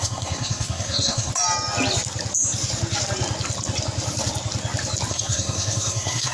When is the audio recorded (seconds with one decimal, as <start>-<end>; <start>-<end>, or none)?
1.3-5.1